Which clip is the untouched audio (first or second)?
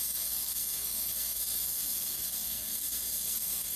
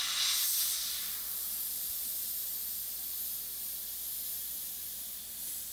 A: second